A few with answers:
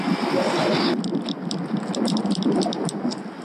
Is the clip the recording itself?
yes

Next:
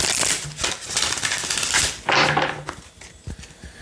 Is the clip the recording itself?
yes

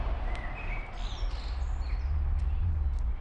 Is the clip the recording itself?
yes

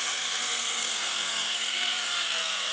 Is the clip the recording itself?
no